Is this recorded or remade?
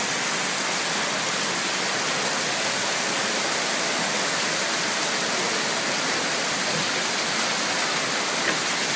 recorded